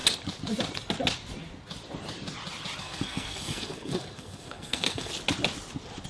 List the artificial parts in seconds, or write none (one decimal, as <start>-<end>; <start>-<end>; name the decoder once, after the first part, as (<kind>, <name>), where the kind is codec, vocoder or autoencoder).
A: 2.8-5.1 (codec, SNAC)